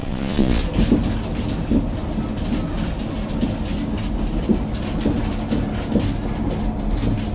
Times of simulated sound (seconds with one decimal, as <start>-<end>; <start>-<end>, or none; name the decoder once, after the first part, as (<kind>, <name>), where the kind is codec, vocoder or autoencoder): 0.0-0.6 (vocoder, Vocos)